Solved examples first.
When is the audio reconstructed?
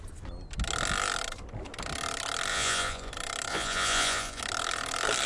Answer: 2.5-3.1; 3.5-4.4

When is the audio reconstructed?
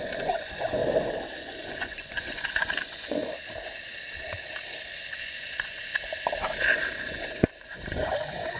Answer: 0.0-0.8; 1.4-3.2; 5.2-5.9; 6.6-8.6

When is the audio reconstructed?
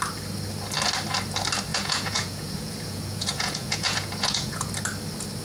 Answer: 1.7-4.7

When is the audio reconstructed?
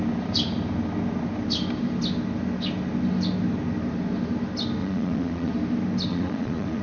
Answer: 4.8-5.5; 6.1-6.8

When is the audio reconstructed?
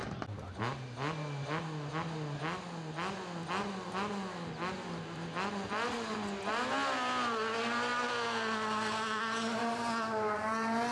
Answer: none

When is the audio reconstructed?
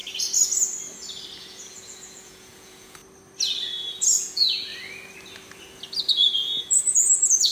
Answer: 1.4-3.0; 3.7-4.7; 6.1-7.5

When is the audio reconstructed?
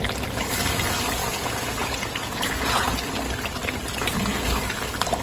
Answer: 1.2-3.0